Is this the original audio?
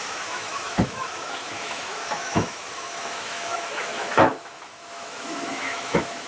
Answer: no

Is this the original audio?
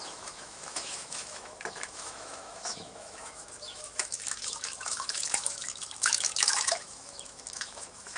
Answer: no